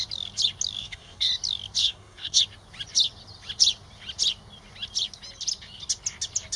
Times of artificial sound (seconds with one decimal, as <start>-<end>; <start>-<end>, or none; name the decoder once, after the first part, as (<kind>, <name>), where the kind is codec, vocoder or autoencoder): 0.8-1.3 (codec, SNAC); 1.8-2.4

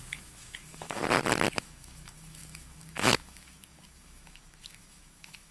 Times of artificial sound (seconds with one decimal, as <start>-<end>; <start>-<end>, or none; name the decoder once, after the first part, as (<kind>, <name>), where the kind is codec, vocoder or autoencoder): 0.0-1.0 (autoencoder, DAC-VAE); 1.6-5.5

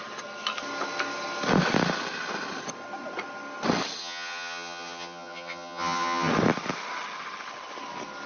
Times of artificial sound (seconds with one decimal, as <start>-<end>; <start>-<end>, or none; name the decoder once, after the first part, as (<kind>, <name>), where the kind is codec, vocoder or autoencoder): 4.0-6.3 (vocoder, HiFi-GAN)